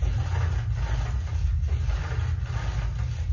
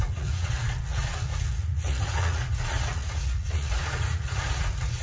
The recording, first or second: first